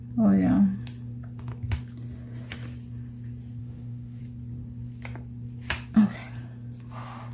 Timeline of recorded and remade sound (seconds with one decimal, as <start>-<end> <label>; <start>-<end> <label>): 0.0-3.6 recorded; 3.6-4.2 remade; 4.2-7.3 recorded

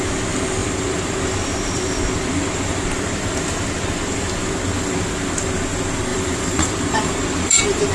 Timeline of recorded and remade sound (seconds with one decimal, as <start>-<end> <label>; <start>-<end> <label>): 0.0-0.6 recorded; 0.6-5.0 remade; 5.0-6.1 recorded; 6.1-7.9 remade

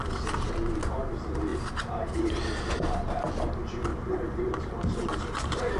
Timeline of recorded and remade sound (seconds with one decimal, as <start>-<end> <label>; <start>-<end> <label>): 0.0-3.9 recorded; 3.9-5.8 remade

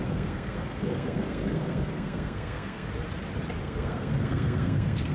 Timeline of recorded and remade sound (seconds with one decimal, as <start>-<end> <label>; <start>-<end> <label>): 0.0-2.9 remade; 2.9-3.6 recorded; 3.6-5.1 remade

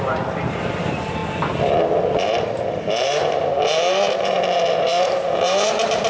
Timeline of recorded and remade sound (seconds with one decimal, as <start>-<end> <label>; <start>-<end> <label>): 0.0-1.2 remade; 1.2-2.1 recorded; 2.1-6.1 remade

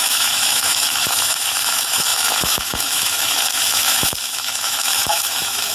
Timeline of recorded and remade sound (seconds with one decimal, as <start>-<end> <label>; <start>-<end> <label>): 0.0-5.7 remade

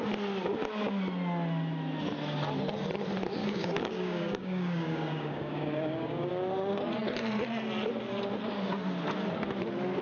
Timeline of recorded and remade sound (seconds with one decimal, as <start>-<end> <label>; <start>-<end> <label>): 0.0-3.4 recorded; 3.4-6.3 remade; 6.3-10.0 recorded

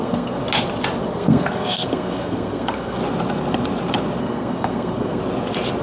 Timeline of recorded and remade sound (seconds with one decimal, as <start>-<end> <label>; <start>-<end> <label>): 0.0-0.4 remade; 0.4-1.0 recorded; 1.0-3.0 remade; 3.0-4.2 recorded; 4.2-5.2 remade; 5.2-5.8 recorded